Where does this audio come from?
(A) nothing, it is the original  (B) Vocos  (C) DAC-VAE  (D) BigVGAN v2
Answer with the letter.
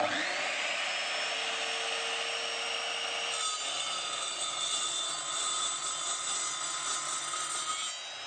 A